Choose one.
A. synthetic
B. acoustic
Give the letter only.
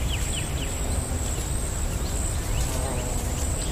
B